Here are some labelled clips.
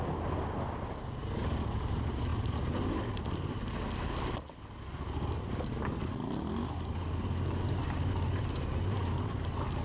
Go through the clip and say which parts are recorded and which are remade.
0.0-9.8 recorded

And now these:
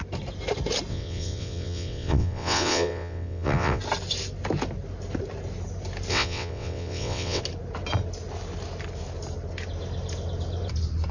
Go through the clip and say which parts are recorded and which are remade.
0.0-0.9 recorded; 0.9-3.8 remade; 3.8-6.1 recorded; 6.1-7.4 remade; 7.4-11.1 recorded

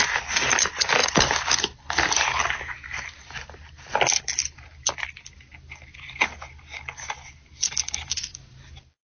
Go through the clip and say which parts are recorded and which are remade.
0.0-9.0 recorded

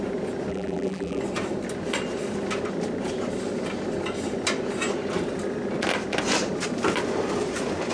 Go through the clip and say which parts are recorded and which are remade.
0.0-0.5 recorded; 0.5-1.2 remade; 1.2-7.9 recorded

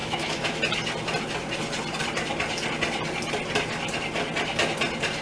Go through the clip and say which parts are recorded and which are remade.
0.0-0.6 remade; 0.6-5.2 recorded

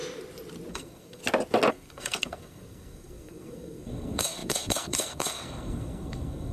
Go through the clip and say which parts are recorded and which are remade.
0.0-0.7 recorded; 0.7-1.2 remade; 1.2-1.7 recorded; 1.7-6.5 remade

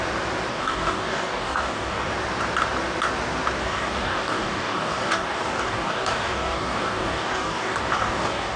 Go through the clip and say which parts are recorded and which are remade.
0.0-0.5 recorded; 0.5-2.1 remade; 2.1-3.6 recorded; 3.6-8.6 remade

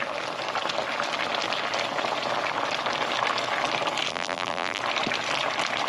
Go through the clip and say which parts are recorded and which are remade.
0.0-4.1 recorded; 4.1-4.8 remade; 4.8-5.9 recorded